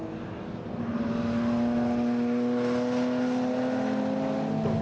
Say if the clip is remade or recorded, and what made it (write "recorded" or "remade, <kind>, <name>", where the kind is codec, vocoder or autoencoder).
recorded